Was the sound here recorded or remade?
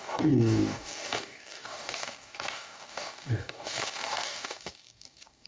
remade